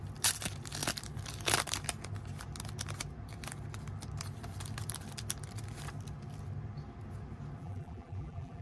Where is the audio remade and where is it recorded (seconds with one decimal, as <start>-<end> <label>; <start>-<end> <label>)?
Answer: 0.0-7.6 recorded; 7.6-8.6 remade